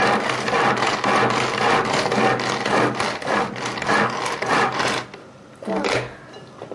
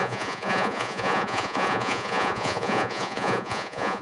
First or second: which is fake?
second